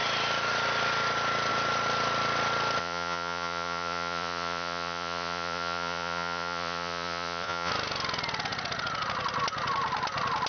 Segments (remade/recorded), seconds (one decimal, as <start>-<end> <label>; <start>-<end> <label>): 0.0-2.8 recorded; 2.8-7.7 remade; 7.7-10.5 recorded